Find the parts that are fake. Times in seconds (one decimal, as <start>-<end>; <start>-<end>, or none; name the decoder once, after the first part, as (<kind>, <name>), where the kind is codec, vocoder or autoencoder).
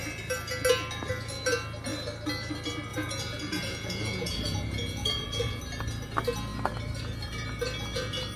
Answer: 2.9-5.6 (vocoder, Vocos)